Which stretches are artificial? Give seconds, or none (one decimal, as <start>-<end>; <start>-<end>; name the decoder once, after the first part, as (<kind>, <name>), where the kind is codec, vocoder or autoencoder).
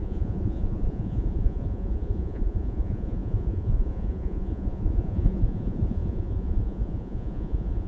0.0-7.9 (vocoder, Vocos)